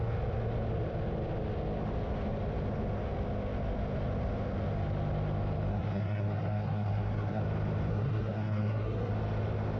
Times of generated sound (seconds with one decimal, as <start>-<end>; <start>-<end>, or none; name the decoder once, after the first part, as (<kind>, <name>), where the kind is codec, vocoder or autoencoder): 5.7-7.4 (codec, SNAC); 7.9-9.1